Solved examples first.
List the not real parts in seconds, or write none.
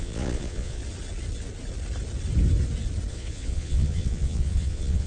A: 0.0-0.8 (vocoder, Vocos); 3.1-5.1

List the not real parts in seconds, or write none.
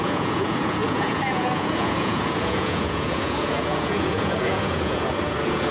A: 0.0-5.7 (vocoder, Vocos)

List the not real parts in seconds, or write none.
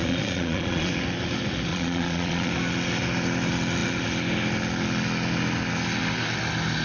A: 0.0-0.9 (vocoder, Vocos); 1.7-2.5